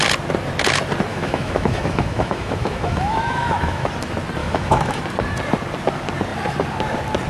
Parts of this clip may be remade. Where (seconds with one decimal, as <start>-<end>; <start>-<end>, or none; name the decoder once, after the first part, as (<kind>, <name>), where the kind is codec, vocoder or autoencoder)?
1.1-3.9 (autoencoder, DAC-VAE); 4.4-5.0